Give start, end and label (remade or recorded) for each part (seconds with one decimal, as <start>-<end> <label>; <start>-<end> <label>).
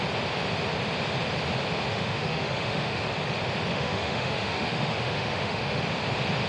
0.0-1.9 recorded; 1.9-3.0 remade; 3.0-3.7 recorded; 3.7-5.8 remade; 5.8-6.5 recorded